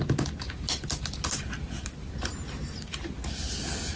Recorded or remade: recorded